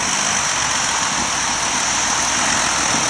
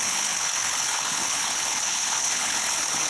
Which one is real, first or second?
first